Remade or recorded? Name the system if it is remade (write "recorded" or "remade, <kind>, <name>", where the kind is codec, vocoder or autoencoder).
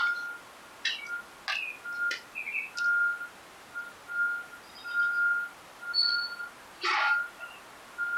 recorded